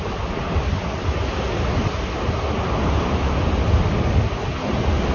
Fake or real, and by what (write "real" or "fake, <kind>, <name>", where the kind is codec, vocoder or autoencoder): real